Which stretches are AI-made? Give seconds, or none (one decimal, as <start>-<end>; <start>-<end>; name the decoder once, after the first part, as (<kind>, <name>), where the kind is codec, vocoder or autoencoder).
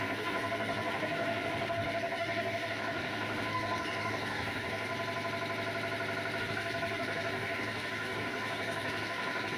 0.0-4.9 (codec, DAC); 6.4-9.6